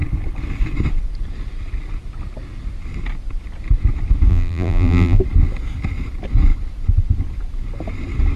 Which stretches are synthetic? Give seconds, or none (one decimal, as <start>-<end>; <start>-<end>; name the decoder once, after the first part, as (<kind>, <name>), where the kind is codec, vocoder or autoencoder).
4.3-5.2 (vocoder, BigVGAN v2)